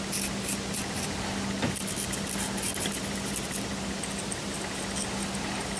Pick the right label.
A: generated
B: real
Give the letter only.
B